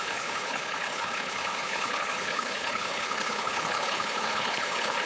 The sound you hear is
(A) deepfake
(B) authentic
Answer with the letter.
A